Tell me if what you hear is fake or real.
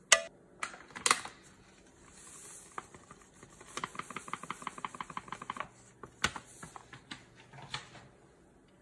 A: real